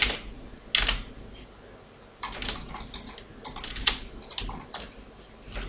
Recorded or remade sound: recorded